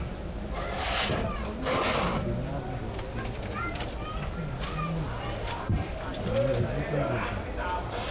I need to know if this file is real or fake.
real